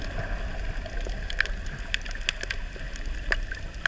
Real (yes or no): yes